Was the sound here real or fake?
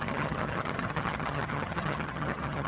fake